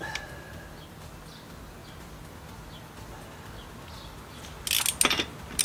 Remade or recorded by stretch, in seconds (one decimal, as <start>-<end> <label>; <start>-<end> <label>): 0.0-5.6 recorded